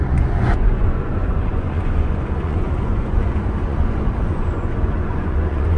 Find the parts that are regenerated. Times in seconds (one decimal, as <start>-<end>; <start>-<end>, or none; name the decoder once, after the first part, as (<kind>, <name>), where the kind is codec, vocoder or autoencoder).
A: 0.0-5.8 (vocoder, Vocos)